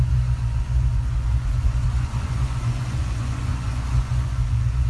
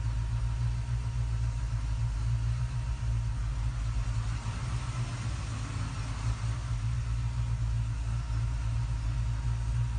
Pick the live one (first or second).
second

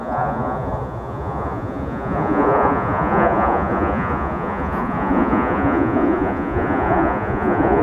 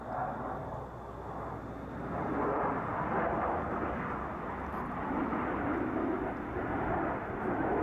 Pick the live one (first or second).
second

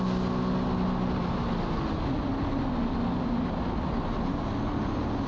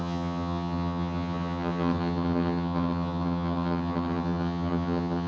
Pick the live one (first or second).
first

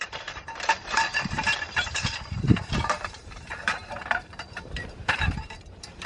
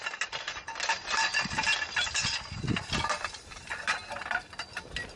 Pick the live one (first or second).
second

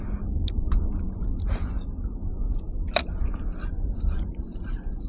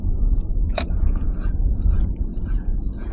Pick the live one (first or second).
first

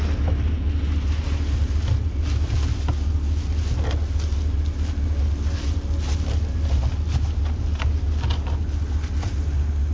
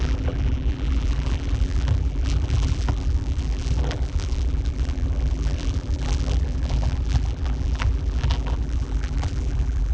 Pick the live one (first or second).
first